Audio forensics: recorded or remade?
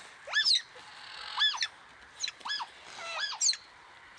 recorded